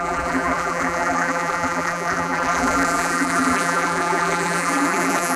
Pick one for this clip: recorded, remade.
remade